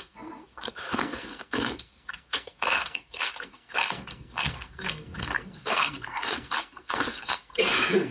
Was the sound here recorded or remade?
remade